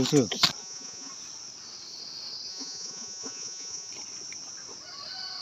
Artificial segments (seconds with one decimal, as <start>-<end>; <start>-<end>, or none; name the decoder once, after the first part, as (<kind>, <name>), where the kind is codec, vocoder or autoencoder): 0.6-1.1 (vocoder, Vocos); 2.5-3.9